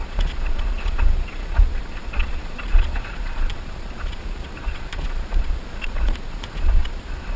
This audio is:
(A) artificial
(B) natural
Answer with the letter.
A